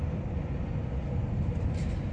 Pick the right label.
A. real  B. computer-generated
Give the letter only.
A